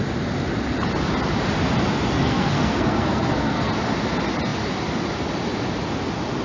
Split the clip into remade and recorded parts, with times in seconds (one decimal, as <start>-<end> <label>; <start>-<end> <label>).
0.0-2.1 recorded; 2.1-3.7 remade; 3.7-6.4 recorded